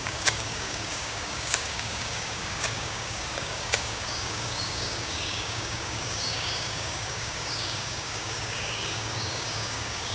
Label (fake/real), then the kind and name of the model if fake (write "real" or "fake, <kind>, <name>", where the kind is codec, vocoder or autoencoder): fake, codec, DAC